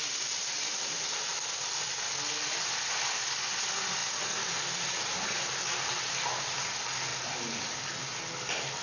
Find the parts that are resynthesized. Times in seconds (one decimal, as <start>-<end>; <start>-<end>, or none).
none